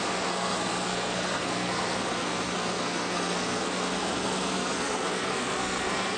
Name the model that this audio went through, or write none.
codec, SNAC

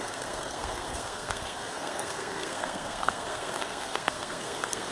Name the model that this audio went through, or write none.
codec, SNAC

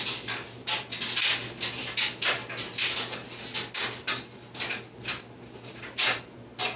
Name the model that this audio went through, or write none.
none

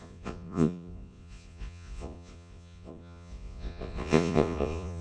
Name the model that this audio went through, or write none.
vocoder, Vocos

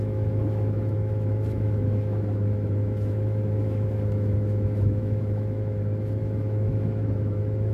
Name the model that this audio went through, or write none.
autoencoder, DAC-VAE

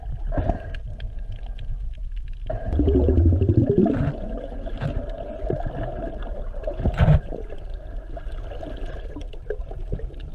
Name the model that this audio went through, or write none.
none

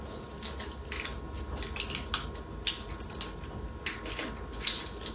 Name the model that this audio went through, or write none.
none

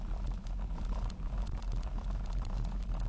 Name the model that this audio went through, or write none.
none